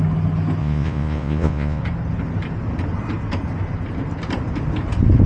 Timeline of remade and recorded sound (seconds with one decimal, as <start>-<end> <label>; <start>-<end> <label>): 0.0-0.6 recorded; 0.6-1.8 remade; 1.8-5.3 recorded